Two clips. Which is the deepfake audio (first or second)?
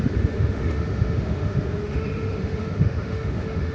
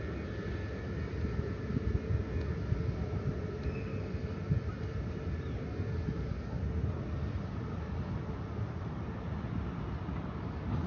first